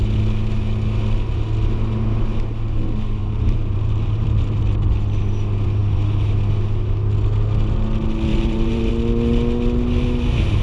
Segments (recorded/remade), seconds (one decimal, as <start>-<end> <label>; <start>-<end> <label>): 0.0-3.2 recorded; 3.2-4.6 remade; 4.6-8.3 recorded; 8.3-8.9 remade; 8.9-10.6 recorded